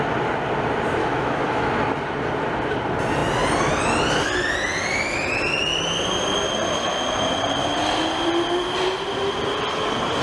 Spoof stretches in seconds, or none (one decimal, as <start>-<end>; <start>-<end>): 1.0-1.7